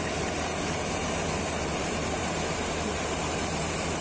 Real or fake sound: fake